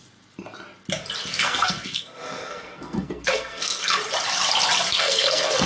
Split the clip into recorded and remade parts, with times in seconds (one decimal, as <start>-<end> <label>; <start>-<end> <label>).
0.0-1.3 recorded; 1.3-4.0 remade; 4.0-4.9 recorded; 4.9-5.7 remade